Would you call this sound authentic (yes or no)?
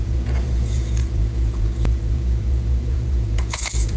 no